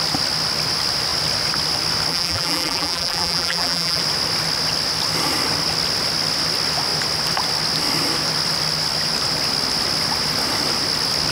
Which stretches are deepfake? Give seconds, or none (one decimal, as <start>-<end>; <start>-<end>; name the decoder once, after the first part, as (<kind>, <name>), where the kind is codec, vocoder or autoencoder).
2.1-4.0 (vocoder, BigVGAN v2)